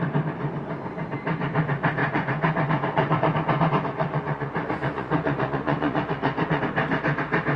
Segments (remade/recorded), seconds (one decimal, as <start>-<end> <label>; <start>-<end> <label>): 0.0-2.0 recorded; 2.0-6.6 remade; 6.6-7.6 recorded